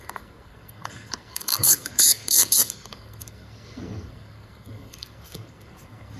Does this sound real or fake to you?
fake